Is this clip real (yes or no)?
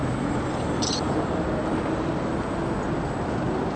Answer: yes